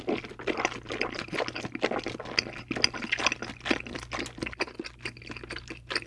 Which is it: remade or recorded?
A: recorded